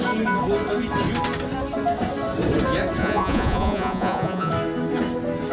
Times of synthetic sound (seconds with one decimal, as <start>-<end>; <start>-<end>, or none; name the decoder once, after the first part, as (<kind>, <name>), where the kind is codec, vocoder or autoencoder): 3.0-4.5 (vocoder, Vocos)